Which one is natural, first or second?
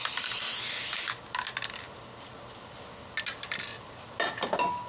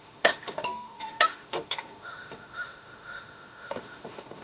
first